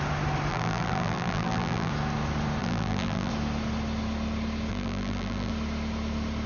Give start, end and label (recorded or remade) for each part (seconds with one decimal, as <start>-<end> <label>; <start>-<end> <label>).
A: 0.0-0.5 recorded; 0.5-1.9 remade; 1.9-2.6 recorded; 2.6-3.3 remade; 3.3-4.7 recorded; 4.7-5.5 remade; 5.5-6.5 recorded